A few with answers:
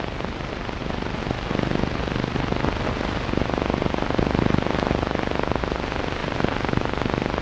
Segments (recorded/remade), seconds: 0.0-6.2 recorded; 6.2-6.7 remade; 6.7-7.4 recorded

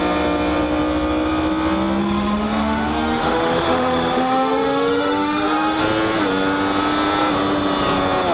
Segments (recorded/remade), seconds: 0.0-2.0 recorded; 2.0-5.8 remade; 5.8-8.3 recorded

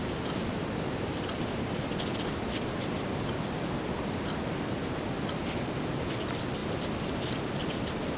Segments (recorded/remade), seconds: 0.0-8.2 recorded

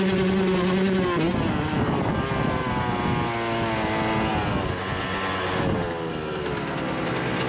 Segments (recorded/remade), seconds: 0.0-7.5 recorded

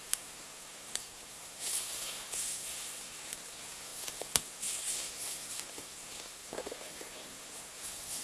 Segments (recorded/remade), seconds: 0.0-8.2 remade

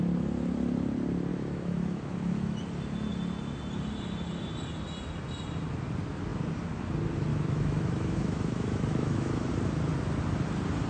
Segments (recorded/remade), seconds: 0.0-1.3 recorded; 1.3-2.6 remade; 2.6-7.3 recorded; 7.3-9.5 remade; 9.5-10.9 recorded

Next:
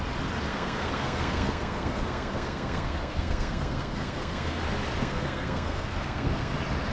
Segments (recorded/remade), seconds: 0.0-0.5 recorded; 0.5-4.6 remade; 4.6-5.0 recorded; 5.0-6.5 remade; 6.5-6.9 recorded

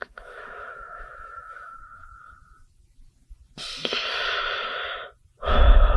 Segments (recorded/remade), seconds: 0.0-1.8 remade; 1.8-5.4 recorded; 5.4-6.0 remade